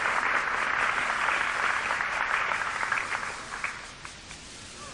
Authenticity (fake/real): real